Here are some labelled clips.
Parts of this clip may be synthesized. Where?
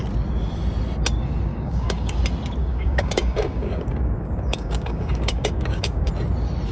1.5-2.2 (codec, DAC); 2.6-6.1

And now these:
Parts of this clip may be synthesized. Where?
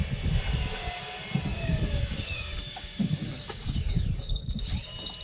1.5-4.6 (codec, DAC)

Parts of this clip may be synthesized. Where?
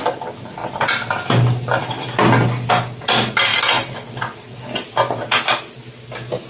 none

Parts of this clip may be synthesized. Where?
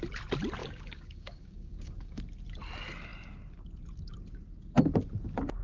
0.6-2.2 (codec, DAC)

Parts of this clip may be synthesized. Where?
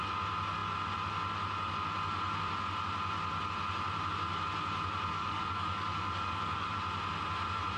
5.1-6.7 (codec, DAC)